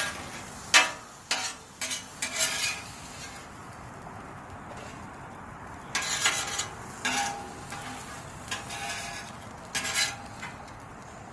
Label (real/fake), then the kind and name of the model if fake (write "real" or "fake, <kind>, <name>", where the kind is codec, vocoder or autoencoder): real